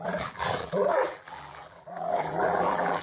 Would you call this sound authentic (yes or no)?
no